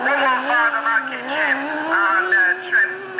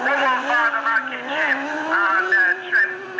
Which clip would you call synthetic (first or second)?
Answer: second